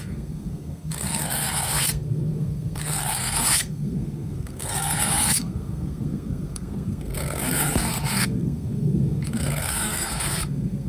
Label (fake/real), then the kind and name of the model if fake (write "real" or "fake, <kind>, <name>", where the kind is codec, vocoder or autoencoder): fake, codec, SNAC